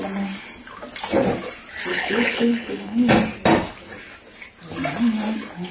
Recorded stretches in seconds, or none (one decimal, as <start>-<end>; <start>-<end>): 0.0-1.9; 3.1-5.7